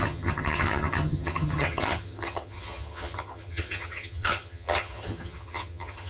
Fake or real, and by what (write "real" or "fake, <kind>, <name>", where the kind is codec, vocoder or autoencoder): fake, vocoder, HiFi-GAN